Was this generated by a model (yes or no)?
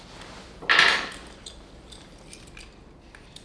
no